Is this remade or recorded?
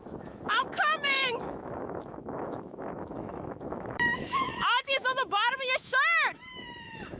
remade